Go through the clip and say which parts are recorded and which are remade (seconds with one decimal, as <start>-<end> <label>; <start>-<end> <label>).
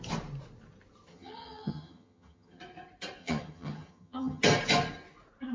0.0-1.1 recorded; 1.1-2.6 remade; 2.6-3.2 recorded; 3.2-4.4 remade; 4.4-5.5 recorded